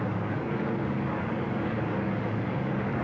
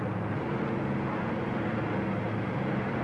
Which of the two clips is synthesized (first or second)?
first